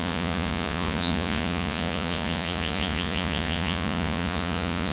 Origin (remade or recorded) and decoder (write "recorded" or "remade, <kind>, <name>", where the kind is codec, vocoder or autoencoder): remade, vocoder, Vocos